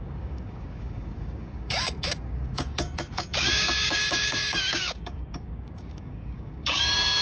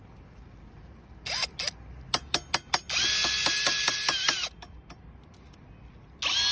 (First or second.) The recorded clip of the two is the second